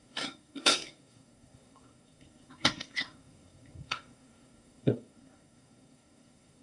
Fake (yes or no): yes